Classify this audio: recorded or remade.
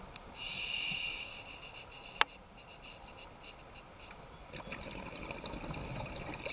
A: recorded